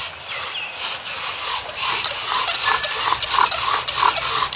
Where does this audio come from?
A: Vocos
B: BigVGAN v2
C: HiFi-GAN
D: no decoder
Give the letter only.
D